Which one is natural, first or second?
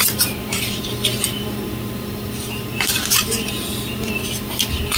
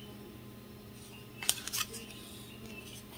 second